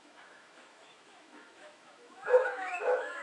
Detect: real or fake fake